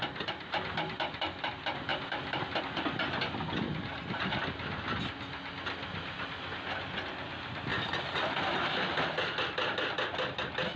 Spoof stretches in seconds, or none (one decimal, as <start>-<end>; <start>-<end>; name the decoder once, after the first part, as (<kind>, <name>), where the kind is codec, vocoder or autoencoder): none